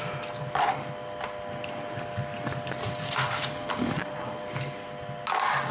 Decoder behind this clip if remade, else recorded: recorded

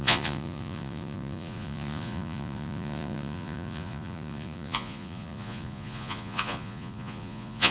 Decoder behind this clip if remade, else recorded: remade, vocoder, Vocos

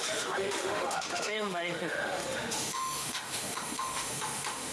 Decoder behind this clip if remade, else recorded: remade, autoencoder, DAC-VAE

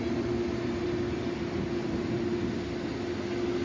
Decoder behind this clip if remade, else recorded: recorded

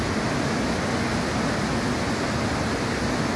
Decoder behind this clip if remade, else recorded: recorded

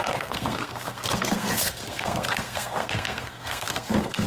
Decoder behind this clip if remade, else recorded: remade, codec, SNAC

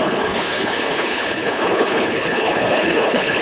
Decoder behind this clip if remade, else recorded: remade, codec, HILCodec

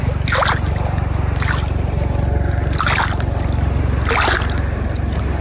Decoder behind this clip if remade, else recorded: recorded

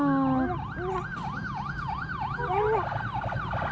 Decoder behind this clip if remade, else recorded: recorded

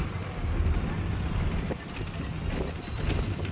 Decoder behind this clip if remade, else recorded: recorded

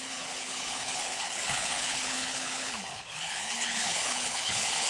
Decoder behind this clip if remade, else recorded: remade, codec, HILCodec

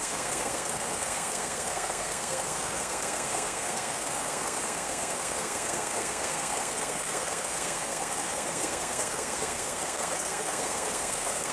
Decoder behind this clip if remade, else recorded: remade, codec, SNAC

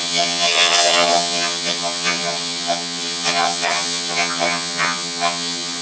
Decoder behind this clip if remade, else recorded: remade, vocoder, HiFi-GAN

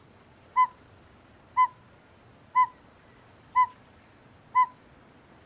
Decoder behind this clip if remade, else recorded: recorded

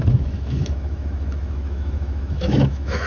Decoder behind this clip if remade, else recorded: remade, autoencoder, DAC-VAE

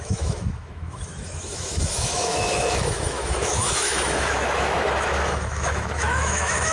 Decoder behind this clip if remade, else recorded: remade, autoencoder, DAC-VAE